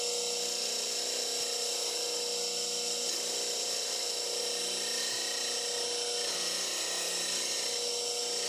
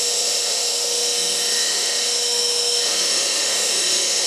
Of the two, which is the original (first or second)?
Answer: first